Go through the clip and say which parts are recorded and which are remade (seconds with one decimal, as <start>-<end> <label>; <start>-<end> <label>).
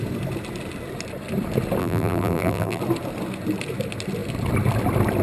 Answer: 0.0-1.8 recorded; 1.8-2.8 remade; 2.8-5.2 recorded